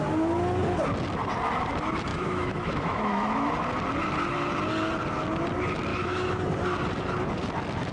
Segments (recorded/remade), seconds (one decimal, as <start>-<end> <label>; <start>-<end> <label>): 0.0-2.1 recorded; 2.1-3.5 remade; 3.5-5.9 recorded; 5.9-6.4 remade; 6.4-7.9 recorded